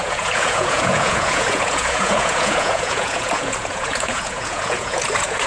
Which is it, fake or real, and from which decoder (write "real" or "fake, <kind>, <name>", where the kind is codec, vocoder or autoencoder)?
fake, vocoder, Vocos